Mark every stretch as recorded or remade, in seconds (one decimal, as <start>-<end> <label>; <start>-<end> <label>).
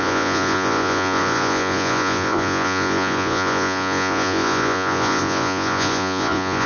0.0-6.7 remade